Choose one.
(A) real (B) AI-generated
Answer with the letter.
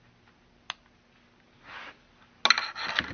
A